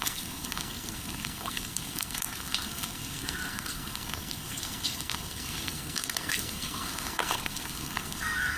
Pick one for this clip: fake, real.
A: fake